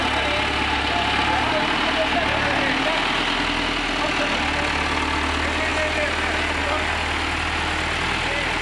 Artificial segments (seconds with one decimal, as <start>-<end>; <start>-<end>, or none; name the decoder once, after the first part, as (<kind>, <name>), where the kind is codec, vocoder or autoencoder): none